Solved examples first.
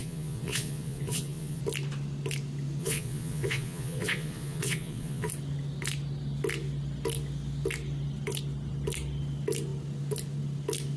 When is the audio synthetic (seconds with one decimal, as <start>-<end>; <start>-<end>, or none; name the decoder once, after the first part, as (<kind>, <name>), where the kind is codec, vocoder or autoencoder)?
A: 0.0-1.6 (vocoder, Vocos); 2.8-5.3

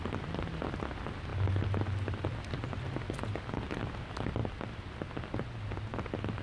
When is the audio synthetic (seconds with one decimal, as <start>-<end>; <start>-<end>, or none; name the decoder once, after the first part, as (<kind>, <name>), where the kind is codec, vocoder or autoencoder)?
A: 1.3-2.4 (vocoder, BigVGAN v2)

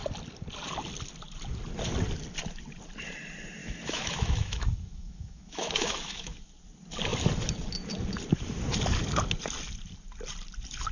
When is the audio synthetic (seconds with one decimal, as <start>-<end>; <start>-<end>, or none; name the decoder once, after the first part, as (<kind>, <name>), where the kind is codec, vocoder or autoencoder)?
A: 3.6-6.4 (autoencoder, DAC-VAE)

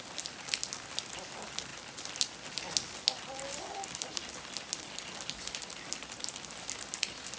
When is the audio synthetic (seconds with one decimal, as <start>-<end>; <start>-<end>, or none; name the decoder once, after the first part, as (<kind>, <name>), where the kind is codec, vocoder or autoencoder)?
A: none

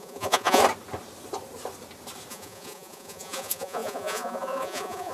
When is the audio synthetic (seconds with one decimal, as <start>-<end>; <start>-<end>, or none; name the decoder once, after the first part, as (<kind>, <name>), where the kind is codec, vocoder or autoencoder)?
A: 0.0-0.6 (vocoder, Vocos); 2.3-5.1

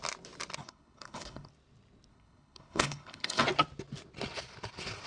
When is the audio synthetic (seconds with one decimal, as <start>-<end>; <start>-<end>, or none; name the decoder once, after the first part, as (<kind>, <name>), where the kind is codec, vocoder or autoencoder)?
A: 0.6-1.5 (codec, HILCodec); 2.1-3.4